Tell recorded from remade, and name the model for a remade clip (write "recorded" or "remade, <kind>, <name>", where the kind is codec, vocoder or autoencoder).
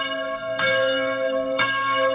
remade, codec, DAC